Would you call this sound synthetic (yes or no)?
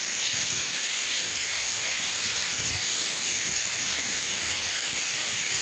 yes